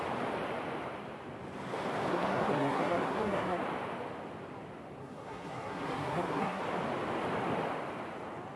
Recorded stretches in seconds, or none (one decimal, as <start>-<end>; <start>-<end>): 0.0-2.1; 3.6-5.0; 6.6-8.6